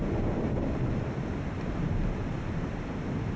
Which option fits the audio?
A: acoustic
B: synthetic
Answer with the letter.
B